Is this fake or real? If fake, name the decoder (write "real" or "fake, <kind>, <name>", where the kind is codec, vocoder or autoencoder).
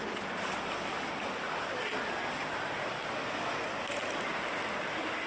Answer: real